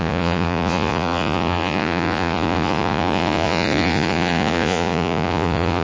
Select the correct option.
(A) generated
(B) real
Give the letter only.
A